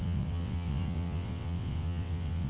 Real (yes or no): no